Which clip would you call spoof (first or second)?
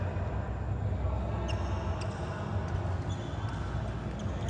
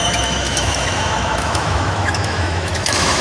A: second